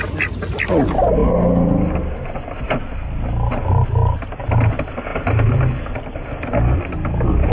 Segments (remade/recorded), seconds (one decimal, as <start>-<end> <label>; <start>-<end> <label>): 0.0-7.5 recorded